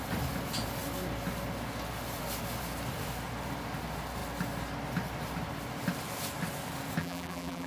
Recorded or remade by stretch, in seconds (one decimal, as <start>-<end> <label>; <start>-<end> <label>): 0.0-7.0 recorded; 7.0-7.7 remade